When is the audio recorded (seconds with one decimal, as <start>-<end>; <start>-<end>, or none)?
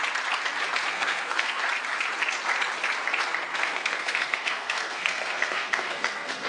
0.0-0.9; 1.6-3.5